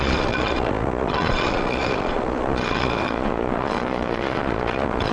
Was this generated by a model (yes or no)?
yes